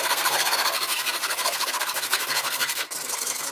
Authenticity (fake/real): fake